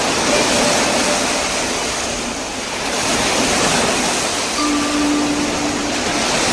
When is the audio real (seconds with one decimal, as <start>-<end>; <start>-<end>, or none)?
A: 0.0-6.5